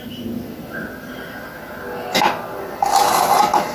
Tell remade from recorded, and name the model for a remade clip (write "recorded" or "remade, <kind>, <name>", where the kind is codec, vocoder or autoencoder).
recorded